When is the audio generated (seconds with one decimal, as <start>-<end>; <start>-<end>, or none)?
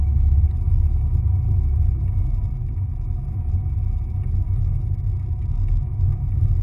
none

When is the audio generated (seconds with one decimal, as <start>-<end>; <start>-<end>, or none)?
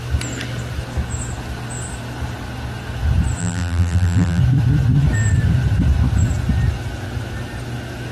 3.4-4.4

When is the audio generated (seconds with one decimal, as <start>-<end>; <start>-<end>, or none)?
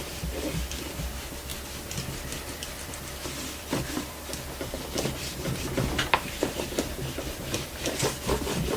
0.0-1.5; 2.0-8.8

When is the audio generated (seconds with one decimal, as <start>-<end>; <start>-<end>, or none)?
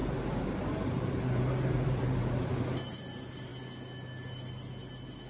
0.0-2.6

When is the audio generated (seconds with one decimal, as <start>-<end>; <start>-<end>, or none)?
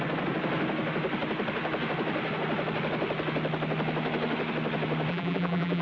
5.1-5.8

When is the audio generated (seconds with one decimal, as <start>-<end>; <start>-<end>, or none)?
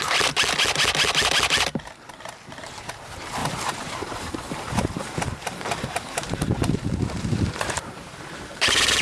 3.4-9.0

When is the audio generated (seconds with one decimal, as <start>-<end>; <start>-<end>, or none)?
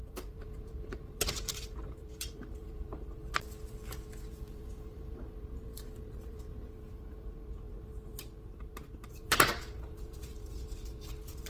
0.0-3.2; 4.3-11.5